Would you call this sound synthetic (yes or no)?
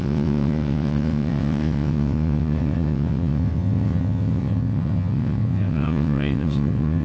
yes